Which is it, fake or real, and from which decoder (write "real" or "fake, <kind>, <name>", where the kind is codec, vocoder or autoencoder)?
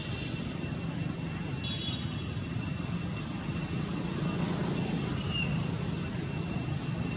real